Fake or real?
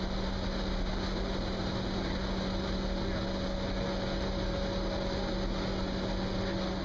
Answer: real